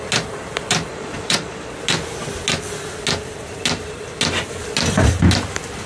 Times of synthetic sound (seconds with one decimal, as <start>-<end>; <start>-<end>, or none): 0.9-1.7